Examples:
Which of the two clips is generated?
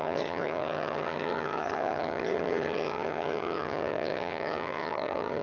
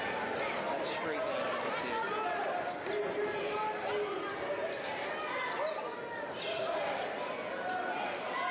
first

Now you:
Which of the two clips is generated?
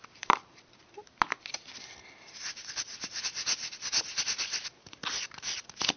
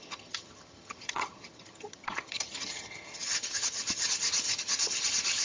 second